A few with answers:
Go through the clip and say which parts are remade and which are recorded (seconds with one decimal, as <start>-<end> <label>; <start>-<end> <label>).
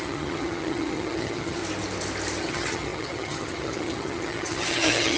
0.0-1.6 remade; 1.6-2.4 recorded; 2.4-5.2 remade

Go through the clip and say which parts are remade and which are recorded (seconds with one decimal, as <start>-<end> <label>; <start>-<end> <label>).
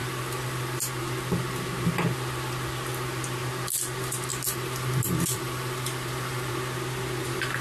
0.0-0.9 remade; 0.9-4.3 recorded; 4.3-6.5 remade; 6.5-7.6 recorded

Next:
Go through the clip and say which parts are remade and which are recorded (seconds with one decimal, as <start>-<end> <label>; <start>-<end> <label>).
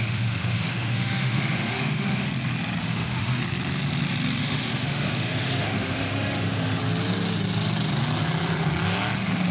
0.0-2.3 remade; 2.3-2.8 recorded; 2.8-3.4 remade; 3.4-4.4 recorded; 4.4-6.8 remade; 6.8-9.5 recorded